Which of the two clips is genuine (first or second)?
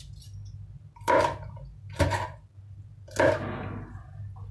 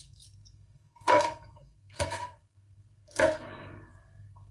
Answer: first